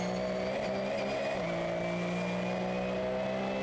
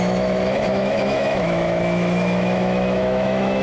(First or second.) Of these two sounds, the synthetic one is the second